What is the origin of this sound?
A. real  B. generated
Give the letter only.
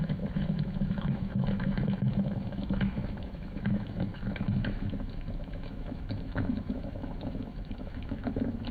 B